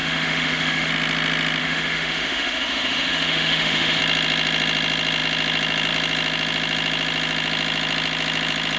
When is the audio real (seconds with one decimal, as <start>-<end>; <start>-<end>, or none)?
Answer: 0.9-1.6; 4.0-8.8